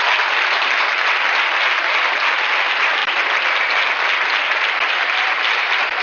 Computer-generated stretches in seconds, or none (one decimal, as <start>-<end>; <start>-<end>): none